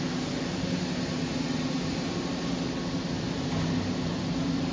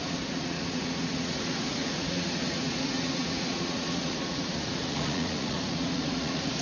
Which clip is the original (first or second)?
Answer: first